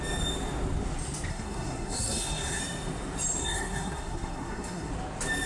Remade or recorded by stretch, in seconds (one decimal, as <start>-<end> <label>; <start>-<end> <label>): 0.0-1.3 recorded; 1.3-2.6 remade; 2.6-3.4 recorded; 3.4-4.9 remade; 4.9-5.5 recorded